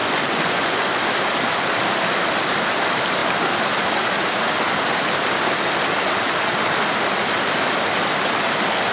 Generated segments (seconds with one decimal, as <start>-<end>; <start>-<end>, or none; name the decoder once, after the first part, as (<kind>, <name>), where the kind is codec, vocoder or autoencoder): 0.0-1.0 (vocoder, Vocos)